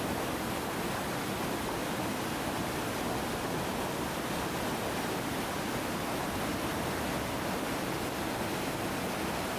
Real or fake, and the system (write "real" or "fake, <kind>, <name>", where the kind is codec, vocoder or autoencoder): real